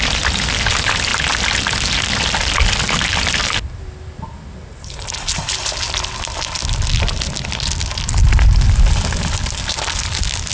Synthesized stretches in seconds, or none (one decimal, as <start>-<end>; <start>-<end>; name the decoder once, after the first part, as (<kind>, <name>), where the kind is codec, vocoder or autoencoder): none

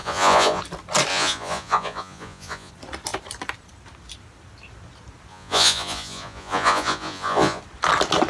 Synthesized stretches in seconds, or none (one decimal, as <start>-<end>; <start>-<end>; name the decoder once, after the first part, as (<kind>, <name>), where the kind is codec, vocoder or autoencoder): 0.0-0.6 (vocoder, Vocos); 1.1-2.7; 5.3-7.6